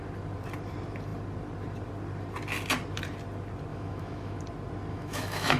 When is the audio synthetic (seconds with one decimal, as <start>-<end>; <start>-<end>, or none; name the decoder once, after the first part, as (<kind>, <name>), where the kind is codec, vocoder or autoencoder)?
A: 3.7-4.4 (autoencoder, DAC-VAE); 4.9-5.6